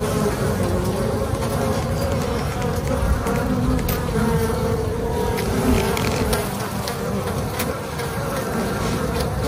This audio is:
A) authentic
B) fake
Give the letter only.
A